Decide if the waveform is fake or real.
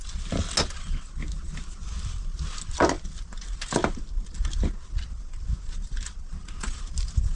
real